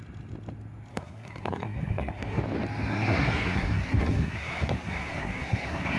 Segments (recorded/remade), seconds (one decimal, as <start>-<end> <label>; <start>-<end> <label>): 0.0-0.9 recorded; 0.9-2.4 remade; 2.4-2.9 recorded; 2.9-6.0 remade